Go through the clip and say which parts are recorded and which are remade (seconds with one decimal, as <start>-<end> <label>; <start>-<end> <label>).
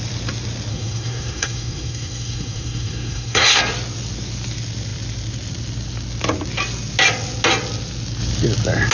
0.0-0.7 recorded; 0.7-3.6 remade; 3.6-8.9 recorded